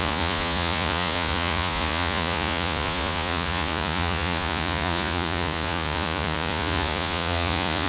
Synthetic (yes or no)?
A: yes